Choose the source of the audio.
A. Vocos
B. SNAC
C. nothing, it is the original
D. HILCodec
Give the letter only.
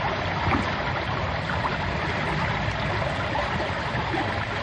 C